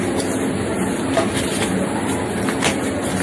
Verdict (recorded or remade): recorded